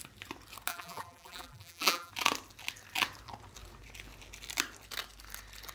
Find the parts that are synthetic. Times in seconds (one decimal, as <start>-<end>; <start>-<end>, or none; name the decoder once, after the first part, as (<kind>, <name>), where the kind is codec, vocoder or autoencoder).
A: 0.7-2.1 (vocoder, BigVGAN v2)